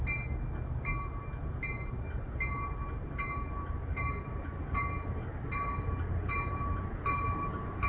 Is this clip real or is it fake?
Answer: real